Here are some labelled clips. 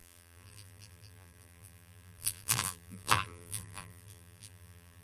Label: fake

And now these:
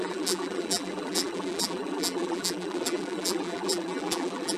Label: fake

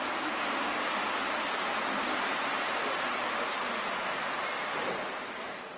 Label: fake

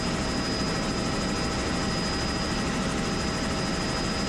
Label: real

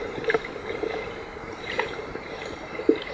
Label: fake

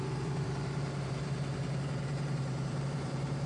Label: fake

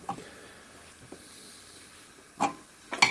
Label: real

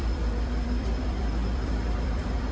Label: fake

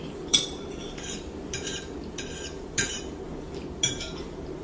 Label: fake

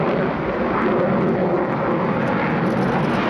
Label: real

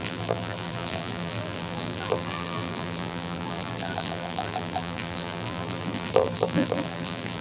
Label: fake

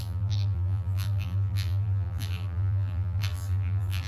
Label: fake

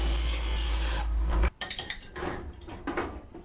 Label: fake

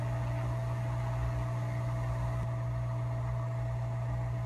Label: real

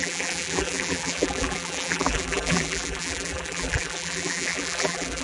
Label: fake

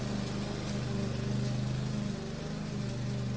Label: real